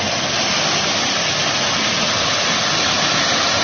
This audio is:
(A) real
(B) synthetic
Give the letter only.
A